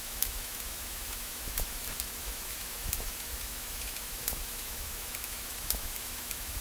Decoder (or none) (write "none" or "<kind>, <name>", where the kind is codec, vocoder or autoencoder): autoencoder, DAC-VAE